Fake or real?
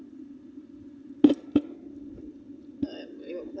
real